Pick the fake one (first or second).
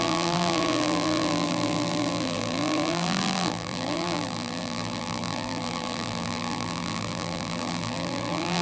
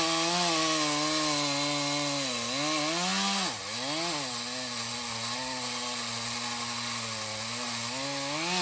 first